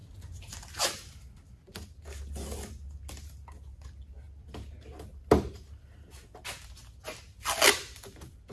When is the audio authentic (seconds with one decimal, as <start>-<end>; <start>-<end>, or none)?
0.0-8.5